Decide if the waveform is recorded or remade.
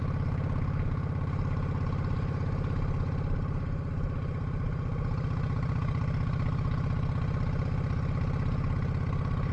recorded